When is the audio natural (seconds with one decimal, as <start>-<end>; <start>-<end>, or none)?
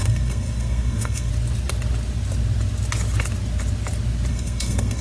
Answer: 1.3-4.3